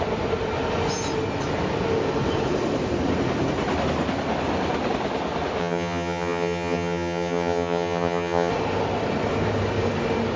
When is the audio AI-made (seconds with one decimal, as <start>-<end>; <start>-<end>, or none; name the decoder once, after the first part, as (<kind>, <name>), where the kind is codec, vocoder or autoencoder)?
5.6-8.5 (vocoder, HiFi-GAN)